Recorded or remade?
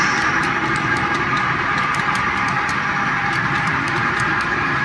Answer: remade